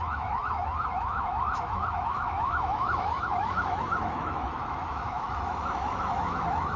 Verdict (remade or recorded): remade